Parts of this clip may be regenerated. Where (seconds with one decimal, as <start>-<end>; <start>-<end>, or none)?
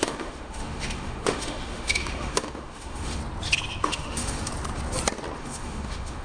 0.0-3.2; 3.8-4.5; 5.4-6.2